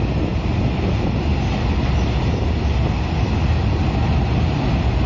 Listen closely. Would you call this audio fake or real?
real